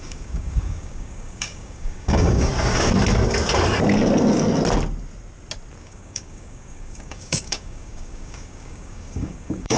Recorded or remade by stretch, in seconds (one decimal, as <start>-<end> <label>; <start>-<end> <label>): 0.0-2.5 remade; 2.5-5.8 recorded; 5.8-9.8 remade